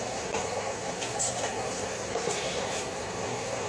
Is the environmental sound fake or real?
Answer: fake